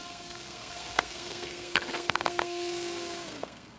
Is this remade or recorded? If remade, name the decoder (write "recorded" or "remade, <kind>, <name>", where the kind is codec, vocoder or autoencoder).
remade, codec, SNAC